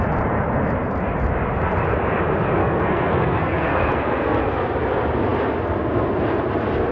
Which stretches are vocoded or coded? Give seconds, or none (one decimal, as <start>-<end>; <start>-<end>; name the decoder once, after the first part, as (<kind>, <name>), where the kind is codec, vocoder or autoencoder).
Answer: 2.6-4.4 (codec, SNAC)